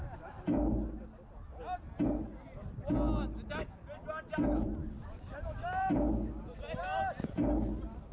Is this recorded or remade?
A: recorded